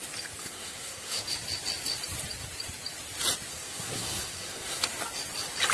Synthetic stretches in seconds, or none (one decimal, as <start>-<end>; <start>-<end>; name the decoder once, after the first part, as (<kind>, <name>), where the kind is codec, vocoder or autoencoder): 0.4-1.2 (codec, SNAC); 3.5-4.8